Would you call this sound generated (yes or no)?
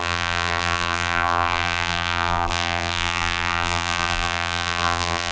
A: yes